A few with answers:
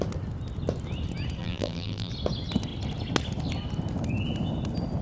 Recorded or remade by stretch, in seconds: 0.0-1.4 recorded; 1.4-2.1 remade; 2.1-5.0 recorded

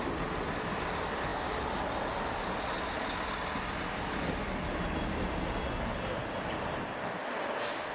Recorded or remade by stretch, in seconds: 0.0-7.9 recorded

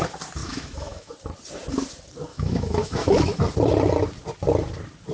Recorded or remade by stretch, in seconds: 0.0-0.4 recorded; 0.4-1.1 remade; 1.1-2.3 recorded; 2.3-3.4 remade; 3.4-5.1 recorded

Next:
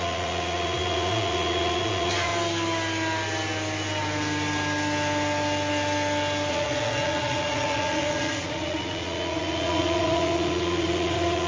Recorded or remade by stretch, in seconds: 0.0-2.3 remade; 2.3-6.5 recorded; 6.5-11.5 remade